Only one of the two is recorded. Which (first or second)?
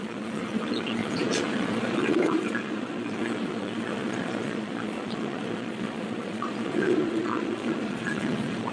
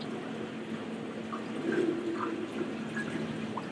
second